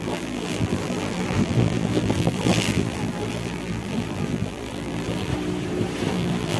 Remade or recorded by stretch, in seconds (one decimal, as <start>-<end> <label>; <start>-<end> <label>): 0.0-5.3 remade; 5.3-6.1 recorded; 6.1-6.6 remade